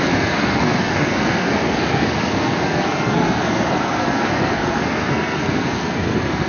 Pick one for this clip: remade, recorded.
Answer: remade